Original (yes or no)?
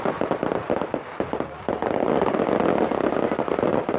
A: yes